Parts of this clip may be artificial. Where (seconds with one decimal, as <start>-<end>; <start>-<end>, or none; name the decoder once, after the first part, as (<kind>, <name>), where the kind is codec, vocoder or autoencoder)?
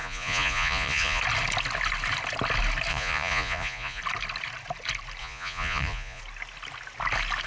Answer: 0.0-1.2 (vocoder, Vocos); 2.9-4.0; 5.2-6.2